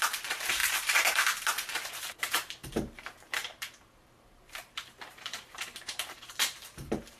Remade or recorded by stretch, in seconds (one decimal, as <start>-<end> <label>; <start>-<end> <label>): 0.0-7.2 remade